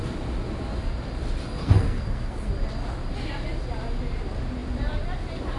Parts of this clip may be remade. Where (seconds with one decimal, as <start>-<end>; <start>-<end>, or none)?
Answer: 1.6-2.5